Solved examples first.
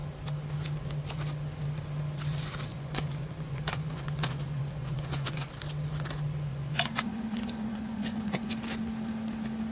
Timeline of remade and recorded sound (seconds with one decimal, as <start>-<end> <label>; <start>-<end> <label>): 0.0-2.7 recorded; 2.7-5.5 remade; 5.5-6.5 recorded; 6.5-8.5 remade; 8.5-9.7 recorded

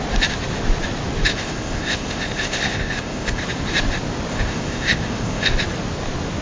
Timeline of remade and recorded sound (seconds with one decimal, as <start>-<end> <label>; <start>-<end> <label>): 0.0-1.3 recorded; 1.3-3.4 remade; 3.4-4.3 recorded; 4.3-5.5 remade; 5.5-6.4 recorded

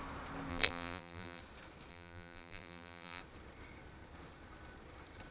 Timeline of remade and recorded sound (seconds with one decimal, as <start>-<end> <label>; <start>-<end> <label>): 0.0-0.5 recorded; 0.5-1.4 remade; 1.4-1.9 recorded; 1.9-3.2 remade; 3.2-5.3 recorded

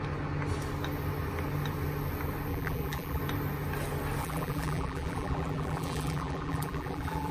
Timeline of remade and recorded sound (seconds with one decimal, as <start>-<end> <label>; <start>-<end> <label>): 0.0-2.5 recorded; 2.5-3.2 remade; 3.2-4.2 recorded; 4.2-7.3 remade

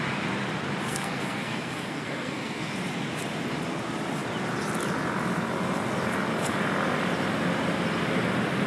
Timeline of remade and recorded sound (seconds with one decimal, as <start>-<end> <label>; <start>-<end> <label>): 0.0-0.8 recorded; 0.8-2.7 remade; 2.7-8.7 recorded